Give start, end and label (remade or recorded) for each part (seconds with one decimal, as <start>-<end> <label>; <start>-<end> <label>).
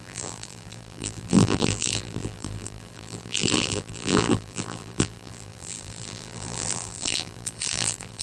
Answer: 0.0-8.2 remade